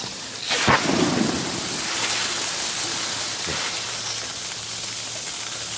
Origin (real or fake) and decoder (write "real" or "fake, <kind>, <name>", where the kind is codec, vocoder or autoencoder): real